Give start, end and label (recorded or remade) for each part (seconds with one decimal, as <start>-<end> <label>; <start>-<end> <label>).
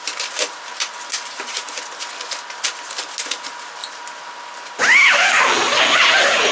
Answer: 0.0-6.5 recorded